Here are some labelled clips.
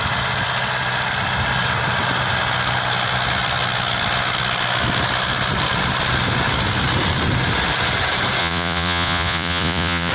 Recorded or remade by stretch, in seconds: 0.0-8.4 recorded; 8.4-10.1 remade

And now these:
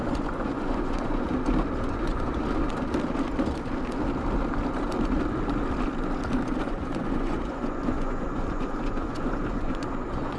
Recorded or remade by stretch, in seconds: 0.0-1.3 remade; 1.3-1.9 recorded; 1.9-2.4 remade; 2.4-6.6 recorded; 6.6-10.4 remade